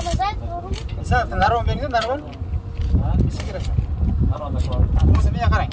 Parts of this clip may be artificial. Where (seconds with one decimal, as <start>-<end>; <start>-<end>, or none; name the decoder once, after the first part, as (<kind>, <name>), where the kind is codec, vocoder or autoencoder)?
1.4-2.1 (vocoder, BigVGAN v2); 3.3-5.2